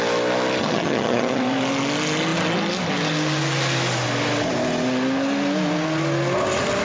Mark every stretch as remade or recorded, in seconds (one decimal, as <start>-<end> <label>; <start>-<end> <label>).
0.0-0.6 recorded; 0.6-1.4 remade; 1.4-6.8 recorded